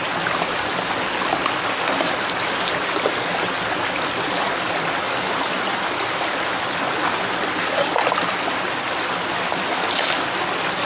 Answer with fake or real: real